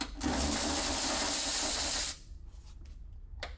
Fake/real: fake